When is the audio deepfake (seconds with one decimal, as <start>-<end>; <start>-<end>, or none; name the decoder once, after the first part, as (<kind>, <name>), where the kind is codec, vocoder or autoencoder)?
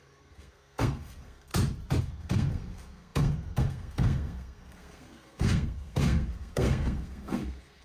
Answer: 0.0-1.5 (codec, SNAC); 2.0-7.8